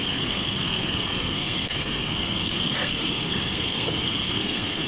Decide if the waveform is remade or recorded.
remade